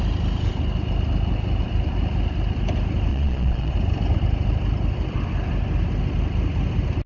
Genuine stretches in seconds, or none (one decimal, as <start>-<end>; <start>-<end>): 0.0-3.1; 3.7-7.1